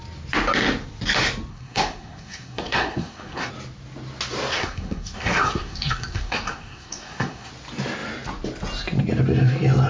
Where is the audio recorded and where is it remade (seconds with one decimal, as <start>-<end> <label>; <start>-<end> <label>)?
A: 0.0-1.5 recorded; 1.5-3.5 remade; 3.5-4.5 recorded; 4.5-7.5 remade; 7.5-9.9 recorded